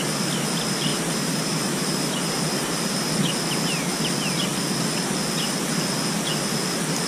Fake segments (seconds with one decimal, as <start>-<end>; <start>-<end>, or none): 0.9-3.1